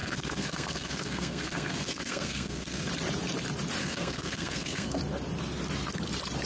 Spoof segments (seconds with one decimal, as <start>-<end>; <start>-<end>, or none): 0.0-2.9; 3.8-5.0